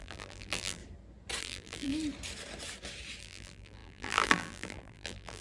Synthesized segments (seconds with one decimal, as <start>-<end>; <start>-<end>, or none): 0.0-0.8; 1.4-1.9; 3.2-5.4